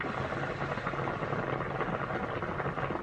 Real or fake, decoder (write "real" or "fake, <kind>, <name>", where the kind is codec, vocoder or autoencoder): real